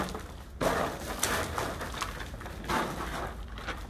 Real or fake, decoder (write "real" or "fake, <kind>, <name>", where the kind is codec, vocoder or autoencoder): real